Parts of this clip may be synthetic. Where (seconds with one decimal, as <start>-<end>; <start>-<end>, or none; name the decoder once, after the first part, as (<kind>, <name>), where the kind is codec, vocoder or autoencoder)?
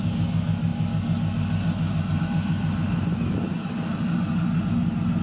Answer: none